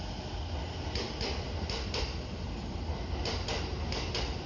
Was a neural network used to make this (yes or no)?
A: no